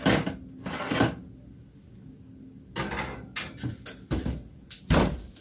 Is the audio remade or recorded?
recorded